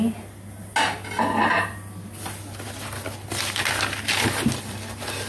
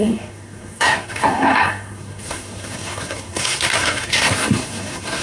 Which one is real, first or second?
first